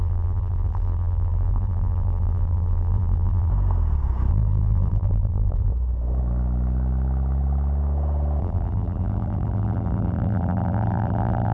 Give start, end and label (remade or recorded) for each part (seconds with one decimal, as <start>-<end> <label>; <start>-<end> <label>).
0.0-3.5 remade; 3.5-4.3 recorded; 4.3-5.7 remade; 5.7-8.4 recorded; 8.4-11.5 remade